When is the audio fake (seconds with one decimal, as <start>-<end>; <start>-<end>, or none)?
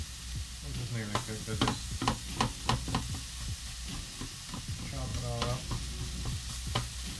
none